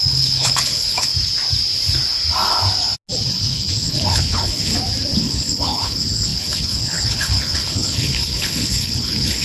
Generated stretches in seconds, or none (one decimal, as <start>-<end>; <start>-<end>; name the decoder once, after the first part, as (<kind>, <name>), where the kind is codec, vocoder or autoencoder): 0.0-1.1 (codec, HILCodec); 3.3-4.7; 5.2-9.4